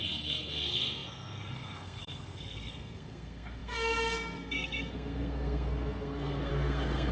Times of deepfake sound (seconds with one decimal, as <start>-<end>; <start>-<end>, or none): 0.0-7.1